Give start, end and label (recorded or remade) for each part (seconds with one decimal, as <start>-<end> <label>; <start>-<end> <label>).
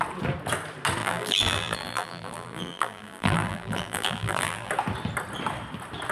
0.0-1.0 recorded; 1.0-4.7 remade; 4.7-6.1 recorded